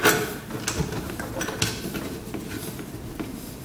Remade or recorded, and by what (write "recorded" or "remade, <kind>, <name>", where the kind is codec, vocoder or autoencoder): recorded